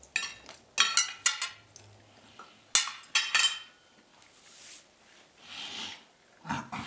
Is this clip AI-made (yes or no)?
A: no